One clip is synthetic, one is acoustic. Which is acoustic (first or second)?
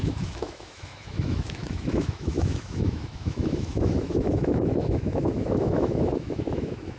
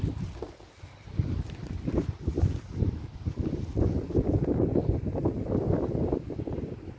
second